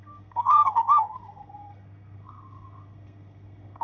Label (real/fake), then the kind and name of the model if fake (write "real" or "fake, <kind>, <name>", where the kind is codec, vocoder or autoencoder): fake, codec, SNAC